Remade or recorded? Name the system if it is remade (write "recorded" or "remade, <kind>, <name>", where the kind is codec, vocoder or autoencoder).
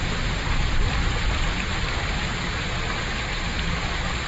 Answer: recorded